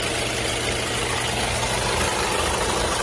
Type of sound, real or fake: real